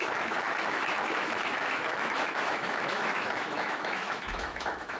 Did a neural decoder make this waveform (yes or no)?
yes